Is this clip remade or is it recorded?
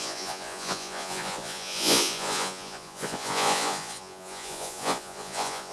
remade